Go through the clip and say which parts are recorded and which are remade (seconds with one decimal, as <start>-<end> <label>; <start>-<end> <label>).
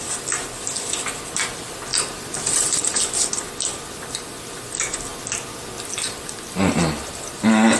0.0-1.9 recorded; 1.9-3.0 remade; 3.0-7.8 recorded